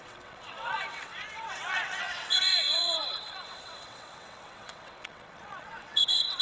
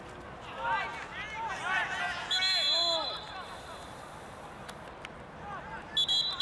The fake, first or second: first